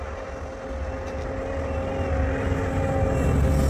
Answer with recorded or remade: recorded